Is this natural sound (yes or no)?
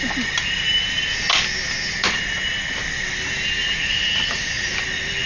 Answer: yes